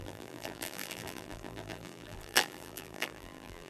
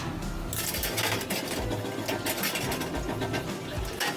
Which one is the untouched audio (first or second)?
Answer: second